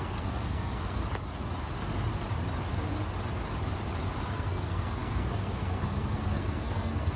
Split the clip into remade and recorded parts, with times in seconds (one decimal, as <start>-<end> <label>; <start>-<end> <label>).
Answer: 0.0-1.0 remade; 1.0-4.3 recorded; 4.3-7.2 remade

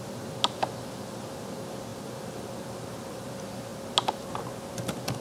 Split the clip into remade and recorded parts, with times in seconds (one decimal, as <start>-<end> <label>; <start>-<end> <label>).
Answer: 0.0-1.9 recorded; 1.9-3.3 remade; 3.3-5.2 recorded

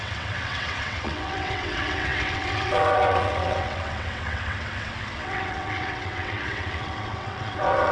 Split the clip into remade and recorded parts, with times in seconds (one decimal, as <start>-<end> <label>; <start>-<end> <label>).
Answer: 0.0-7.9 remade